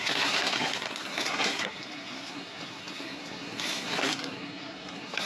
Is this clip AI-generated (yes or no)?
yes